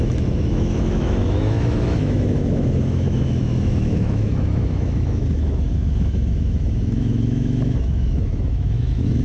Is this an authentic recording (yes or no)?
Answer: no